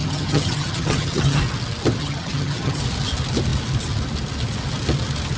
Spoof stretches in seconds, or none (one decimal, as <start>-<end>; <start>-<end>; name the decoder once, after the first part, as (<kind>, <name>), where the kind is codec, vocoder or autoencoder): 0.0-1.4 (vocoder, HiFi-GAN); 2.0-2.8